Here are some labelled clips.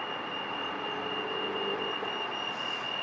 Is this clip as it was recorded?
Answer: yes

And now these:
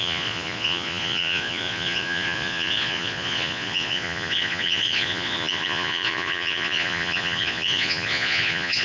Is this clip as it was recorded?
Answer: no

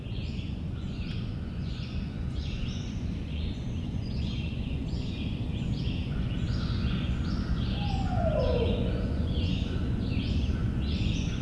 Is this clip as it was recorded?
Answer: no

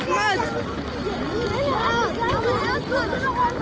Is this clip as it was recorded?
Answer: yes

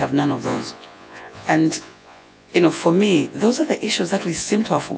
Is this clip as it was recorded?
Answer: no